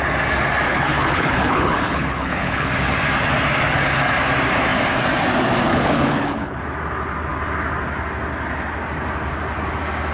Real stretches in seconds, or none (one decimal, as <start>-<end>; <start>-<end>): 0.0-0.7; 2.7-5.7; 6.6-10.1